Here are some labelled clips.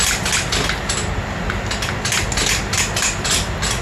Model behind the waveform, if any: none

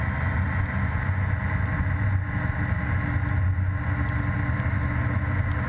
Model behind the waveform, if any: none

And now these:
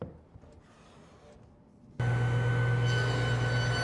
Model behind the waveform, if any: none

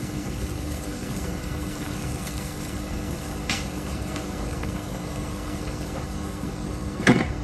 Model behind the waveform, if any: codec, SNAC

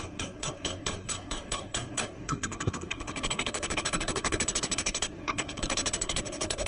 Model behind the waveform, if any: codec, SNAC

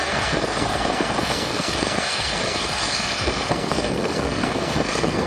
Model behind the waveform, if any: codec, SNAC